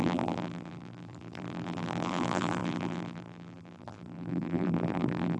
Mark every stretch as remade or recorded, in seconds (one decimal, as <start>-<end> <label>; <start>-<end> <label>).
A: 0.0-5.4 remade